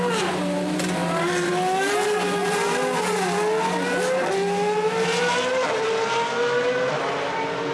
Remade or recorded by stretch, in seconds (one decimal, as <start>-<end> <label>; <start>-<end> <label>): 0.0-7.7 recorded

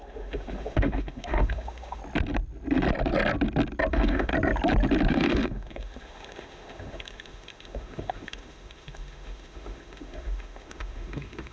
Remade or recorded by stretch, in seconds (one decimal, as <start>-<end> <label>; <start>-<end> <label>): 0.0-2.0 remade; 2.0-3.9 recorded; 3.9-4.3 remade; 4.3-5.1 recorded; 5.1-11.5 remade